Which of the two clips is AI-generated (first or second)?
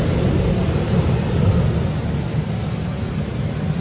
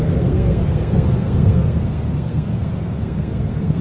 second